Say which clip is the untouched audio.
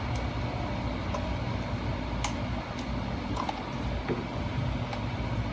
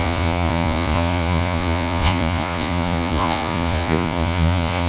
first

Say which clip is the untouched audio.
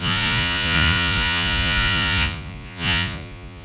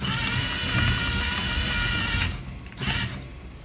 second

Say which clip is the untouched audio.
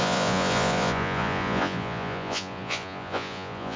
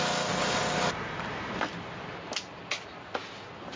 second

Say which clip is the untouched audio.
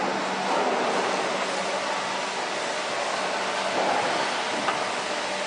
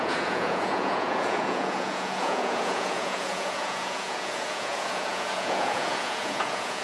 first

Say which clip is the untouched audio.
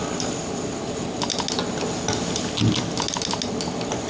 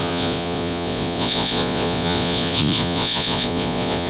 first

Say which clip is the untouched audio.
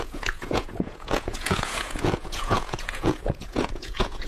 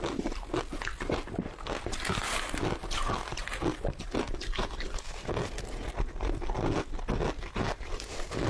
second